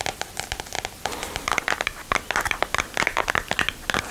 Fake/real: real